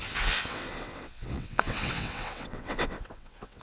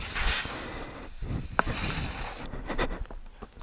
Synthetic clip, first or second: first